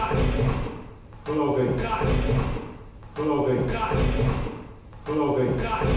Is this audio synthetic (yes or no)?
no